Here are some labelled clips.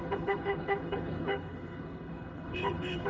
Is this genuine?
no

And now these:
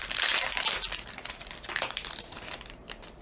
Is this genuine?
no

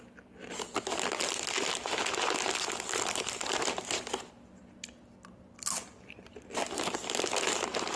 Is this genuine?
yes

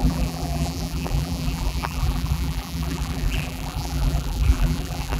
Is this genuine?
no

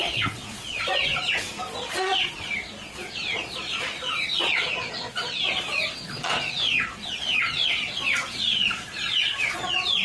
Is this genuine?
no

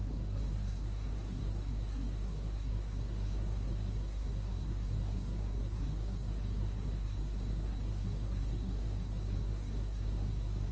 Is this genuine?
no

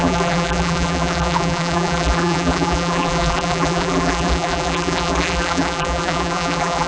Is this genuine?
no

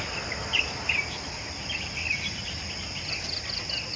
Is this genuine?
yes